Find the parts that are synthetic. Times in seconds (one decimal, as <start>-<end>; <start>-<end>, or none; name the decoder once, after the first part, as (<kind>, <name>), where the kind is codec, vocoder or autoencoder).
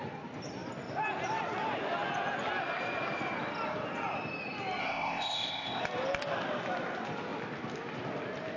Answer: 4.8-5.8 (codec, ZipCodec)